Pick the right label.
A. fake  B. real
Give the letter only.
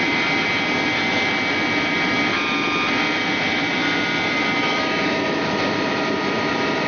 B